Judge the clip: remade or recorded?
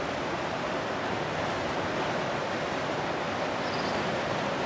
recorded